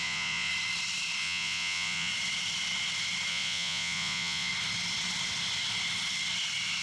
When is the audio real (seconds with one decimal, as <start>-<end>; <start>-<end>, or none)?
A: 0.5-1.2; 2.1-3.3; 4.5-6.8